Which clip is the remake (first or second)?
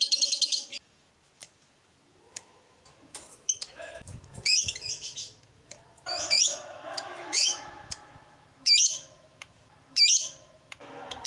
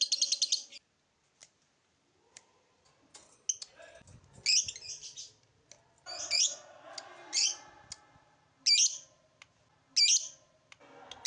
first